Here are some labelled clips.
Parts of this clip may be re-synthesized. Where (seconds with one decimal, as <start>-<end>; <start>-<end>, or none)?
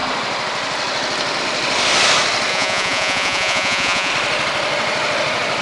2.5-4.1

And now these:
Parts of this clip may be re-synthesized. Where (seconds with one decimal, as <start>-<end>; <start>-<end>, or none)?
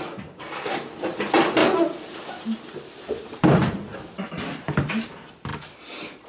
0.0-1.6; 2.3-5.5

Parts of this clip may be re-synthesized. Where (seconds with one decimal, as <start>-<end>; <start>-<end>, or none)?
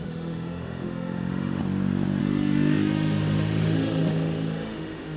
0.0-1.6; 2.2-5.2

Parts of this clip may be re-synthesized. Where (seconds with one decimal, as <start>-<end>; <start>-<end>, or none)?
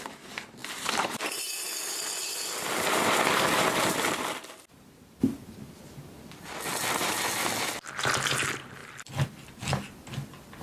0.6-1.4; 8.8-9.8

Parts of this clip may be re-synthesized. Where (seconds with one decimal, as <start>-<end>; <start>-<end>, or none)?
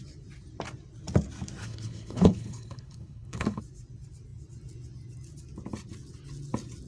1.6-3.6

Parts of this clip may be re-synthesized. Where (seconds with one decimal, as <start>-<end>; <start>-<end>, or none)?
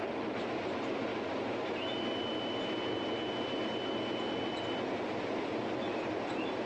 0.0-1.1; 4.7-6.7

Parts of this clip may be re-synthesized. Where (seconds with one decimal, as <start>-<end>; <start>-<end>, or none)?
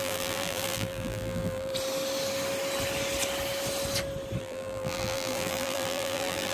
0.0-1.7; 4.4-6.5